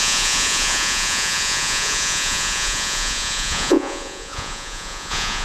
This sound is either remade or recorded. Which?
remade